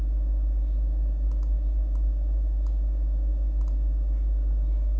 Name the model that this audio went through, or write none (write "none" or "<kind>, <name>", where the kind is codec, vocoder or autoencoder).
none